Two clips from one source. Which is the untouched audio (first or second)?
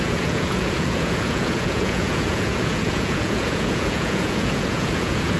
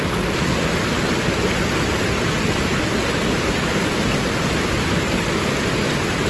second